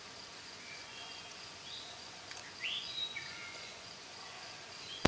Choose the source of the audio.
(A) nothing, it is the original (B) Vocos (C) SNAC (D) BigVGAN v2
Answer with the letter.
B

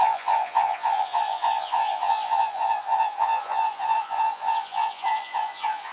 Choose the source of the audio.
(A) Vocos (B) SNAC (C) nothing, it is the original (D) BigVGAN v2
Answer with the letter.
A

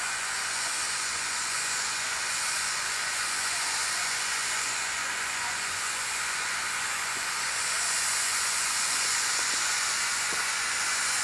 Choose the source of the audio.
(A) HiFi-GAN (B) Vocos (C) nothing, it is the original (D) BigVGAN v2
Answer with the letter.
B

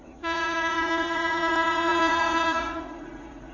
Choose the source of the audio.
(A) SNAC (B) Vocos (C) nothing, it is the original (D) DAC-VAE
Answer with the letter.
B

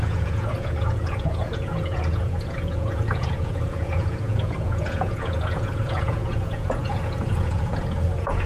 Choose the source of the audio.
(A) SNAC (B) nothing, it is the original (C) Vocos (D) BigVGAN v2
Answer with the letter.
C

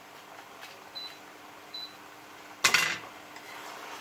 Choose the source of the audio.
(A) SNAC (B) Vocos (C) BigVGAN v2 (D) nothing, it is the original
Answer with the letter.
D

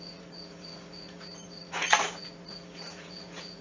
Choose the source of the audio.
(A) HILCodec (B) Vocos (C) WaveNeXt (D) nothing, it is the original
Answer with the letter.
B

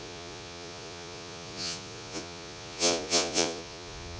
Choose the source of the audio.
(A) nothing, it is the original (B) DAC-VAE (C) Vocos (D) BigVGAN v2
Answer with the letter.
C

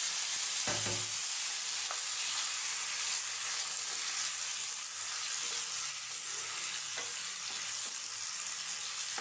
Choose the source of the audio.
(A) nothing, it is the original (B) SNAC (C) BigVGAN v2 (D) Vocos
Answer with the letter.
A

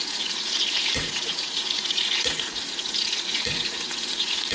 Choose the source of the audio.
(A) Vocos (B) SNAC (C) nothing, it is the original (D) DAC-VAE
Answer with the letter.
A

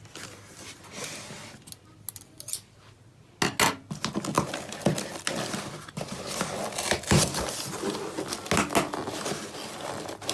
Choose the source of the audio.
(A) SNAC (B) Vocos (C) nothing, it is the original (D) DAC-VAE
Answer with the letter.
C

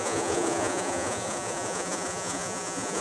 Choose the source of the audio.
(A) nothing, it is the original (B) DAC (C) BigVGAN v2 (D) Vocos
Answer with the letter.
D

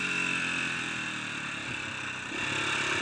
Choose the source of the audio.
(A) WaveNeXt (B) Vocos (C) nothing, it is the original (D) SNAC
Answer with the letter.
C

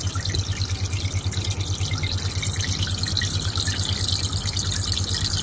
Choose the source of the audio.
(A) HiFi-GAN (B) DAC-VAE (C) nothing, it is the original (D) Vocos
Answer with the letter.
C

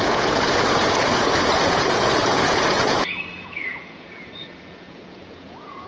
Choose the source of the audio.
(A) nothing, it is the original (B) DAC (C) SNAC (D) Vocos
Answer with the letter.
D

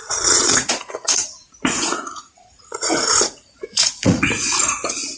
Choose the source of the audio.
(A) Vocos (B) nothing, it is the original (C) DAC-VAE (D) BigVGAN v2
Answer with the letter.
A